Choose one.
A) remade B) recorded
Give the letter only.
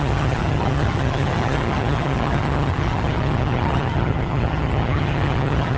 A